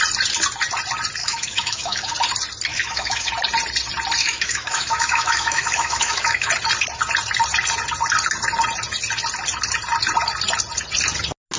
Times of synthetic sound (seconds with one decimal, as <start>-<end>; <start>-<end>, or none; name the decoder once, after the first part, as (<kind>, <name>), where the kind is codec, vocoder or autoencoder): 1.2-2.1 (autoencoder, DAC-VAE); 2.7-3.3; 4.2-6.5